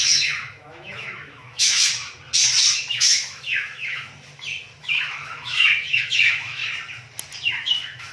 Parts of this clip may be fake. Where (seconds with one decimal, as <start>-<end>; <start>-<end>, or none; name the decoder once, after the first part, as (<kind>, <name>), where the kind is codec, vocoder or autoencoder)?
0.0-1.9 (autoencoder, DAC-VAE); 2.9-4.1; 4.8-6.6; 7.5-8.1